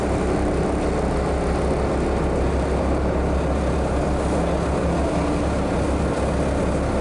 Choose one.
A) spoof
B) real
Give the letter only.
B